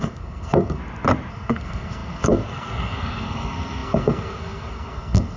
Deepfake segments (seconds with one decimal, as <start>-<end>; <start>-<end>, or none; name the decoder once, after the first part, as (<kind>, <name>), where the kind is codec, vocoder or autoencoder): 0.0-0.8 (codec, SNAC); 1.3-5.4